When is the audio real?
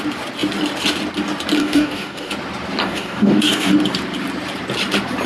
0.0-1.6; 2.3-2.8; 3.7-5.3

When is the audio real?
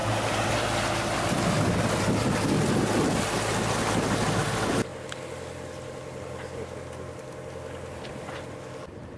0.0-9.2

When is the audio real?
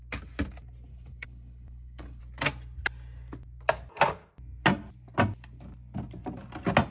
0.0-0.9; 2.2-6.9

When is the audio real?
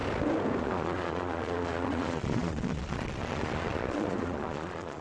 0.0-0.6